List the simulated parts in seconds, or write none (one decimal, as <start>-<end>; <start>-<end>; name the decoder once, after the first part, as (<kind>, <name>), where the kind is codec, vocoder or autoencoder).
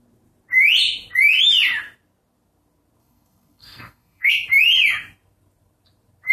3.0-4.3 (codec, SNAC)